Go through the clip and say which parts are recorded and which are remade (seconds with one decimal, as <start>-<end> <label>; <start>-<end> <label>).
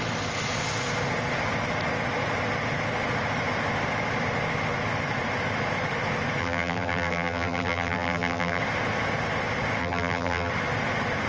0.0-6.4 recorded; 6.4-8.6 remade; 8.6-9.8 recorded; 9.8-10.5 remade; 10.5-11.3 recorded